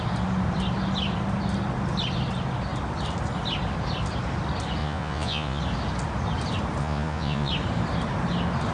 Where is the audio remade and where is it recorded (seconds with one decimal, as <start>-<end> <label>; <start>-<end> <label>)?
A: 0.0-4.8 recorded; 4.8-5.6 remade; 5.6-6.8 recorded; 6.8-7.5 remade; 7.5-8.7 recorded